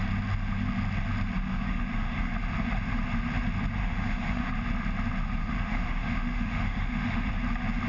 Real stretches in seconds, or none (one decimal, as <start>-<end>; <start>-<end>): 0.0-1.5; 2.3-3.8; 4.5-5.4; 7.3-7.9